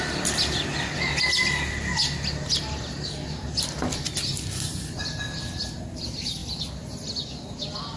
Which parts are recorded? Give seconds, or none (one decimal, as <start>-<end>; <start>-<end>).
0.0-8.0